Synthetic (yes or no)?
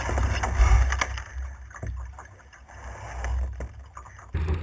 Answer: no